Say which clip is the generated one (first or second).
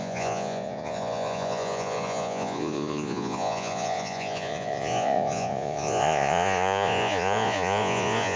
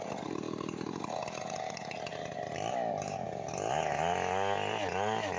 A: first